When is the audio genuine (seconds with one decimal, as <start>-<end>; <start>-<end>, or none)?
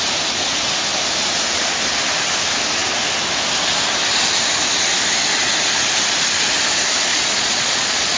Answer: 0.0-7.1